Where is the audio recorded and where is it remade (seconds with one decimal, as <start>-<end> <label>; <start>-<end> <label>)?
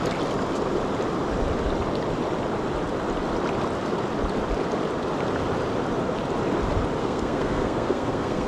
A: 0.0-7.0 recorded; 7.0-8.5 remade